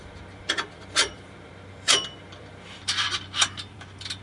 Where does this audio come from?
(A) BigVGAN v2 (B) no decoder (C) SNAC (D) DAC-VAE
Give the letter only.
A